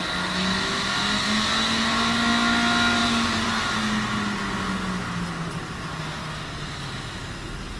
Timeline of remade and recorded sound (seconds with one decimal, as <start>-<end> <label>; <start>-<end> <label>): 0.0-3.0 recorded; 3.0-3.7 remade; 3.7-5.9 recorded; 5.9-6.4 remade; 6.4-7.8 recorded